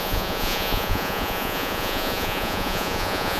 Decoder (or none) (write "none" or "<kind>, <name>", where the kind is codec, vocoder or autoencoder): vocoder, Vocos